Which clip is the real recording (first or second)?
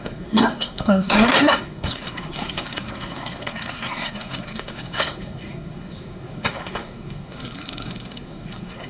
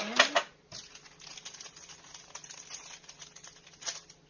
second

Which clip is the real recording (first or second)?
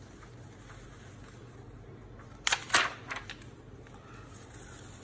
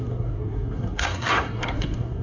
first